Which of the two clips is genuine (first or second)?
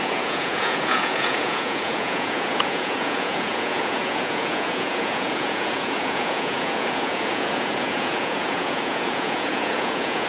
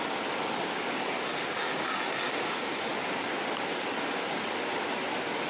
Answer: second